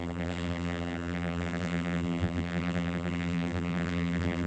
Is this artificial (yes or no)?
yes